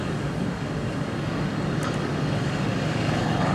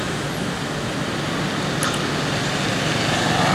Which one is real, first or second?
second